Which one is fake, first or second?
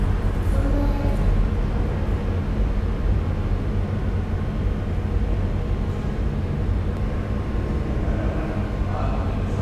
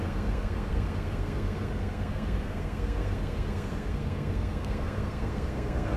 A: second